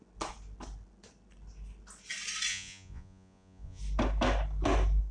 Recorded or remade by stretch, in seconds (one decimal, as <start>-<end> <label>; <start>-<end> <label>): 0.0-2.5 recorded; 2.5-3.8 remade; 3.8-5.1 recorded